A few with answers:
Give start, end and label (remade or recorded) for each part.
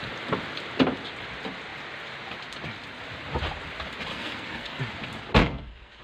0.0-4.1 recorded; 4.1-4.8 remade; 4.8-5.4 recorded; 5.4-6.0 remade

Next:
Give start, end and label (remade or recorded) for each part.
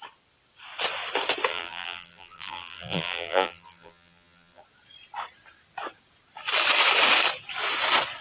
0.0-1.5 recorded; 1.5-4.6 remade; 4.6-8.2 recorded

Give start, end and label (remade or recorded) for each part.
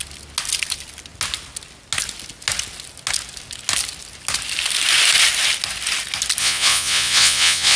0.0-6.4 recorded; 6.4-7.8 remade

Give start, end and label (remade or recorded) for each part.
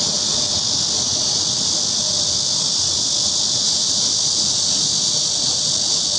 0.0-6.2 recorded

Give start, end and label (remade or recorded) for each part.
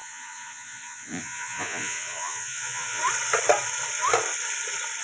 0.0-3.0 remade; 3.0-5.0 recorded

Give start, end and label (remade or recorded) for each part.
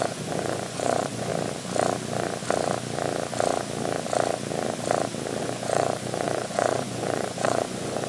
0.0-1.3 remade; 1.3-5.4 recorded; 5.4-8.1 remade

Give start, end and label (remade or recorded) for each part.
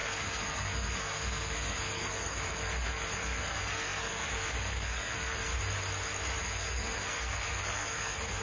0.0-5.5 remade; 5.5-6.4 recorded; 6.4-8.4 remade